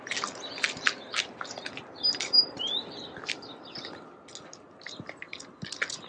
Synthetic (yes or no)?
no